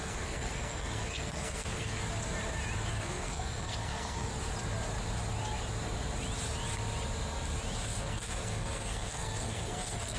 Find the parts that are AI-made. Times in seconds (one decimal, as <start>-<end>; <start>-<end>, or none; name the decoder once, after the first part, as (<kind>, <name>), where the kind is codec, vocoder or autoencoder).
0.0-2.0 (codec, SNAC); 2.9-4.3; 8.0-10.2